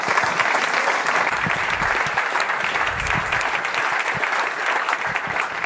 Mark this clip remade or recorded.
recorded